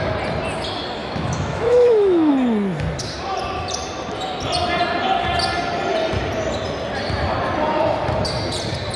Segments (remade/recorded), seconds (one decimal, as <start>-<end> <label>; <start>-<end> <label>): 0.0-1.0 recorded; 1.0-2.3 remade; 2.3-9.0 recorded